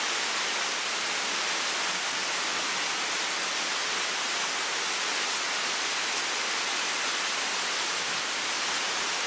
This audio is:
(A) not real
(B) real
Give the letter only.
B